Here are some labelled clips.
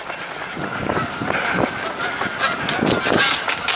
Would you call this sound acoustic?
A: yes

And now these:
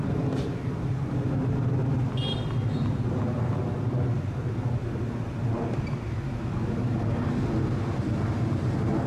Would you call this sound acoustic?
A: yes